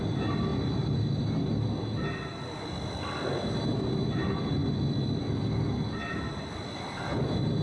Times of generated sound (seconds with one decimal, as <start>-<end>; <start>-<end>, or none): none

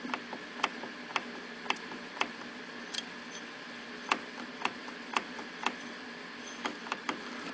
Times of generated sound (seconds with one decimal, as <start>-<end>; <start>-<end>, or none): none

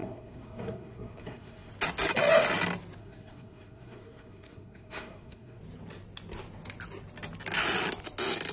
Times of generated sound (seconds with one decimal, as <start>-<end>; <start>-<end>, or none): 0.0-1.7; 3.0-5.6